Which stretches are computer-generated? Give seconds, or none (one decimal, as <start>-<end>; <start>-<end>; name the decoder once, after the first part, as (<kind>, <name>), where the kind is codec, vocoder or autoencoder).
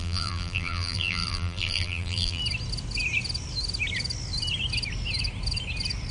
0.0-2.4 (vocoder, BigVGAN v2)